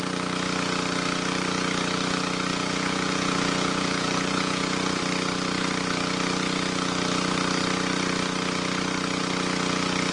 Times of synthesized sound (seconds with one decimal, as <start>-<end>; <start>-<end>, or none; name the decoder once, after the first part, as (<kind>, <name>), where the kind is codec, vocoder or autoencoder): 2.5-5.0 (vocoder, Vocos)